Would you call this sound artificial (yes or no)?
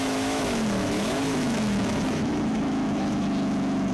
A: yes